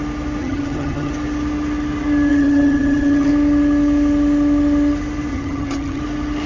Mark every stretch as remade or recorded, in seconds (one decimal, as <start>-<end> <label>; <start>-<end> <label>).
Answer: 0.0-0.4 recorded; 0.4-1.1 remade; 1.1-2.3 recorded; 2.3-3.3 remade; 3.3-5.3 recorded; 5.3-6.0 remade; 6.0-6.5 recorded